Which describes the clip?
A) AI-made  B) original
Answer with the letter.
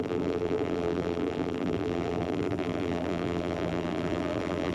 A